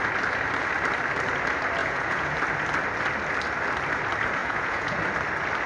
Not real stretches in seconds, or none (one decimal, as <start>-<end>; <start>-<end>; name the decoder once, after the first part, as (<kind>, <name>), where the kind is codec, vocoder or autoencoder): 1.8-2.4 (vocoder, Vocos); 4.4-5.0